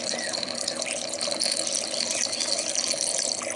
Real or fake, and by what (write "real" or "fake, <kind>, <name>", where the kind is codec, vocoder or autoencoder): real